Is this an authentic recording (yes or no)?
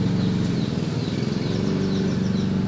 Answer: yes